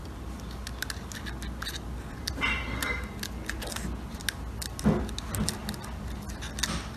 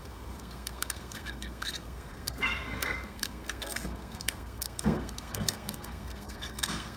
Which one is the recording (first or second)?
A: first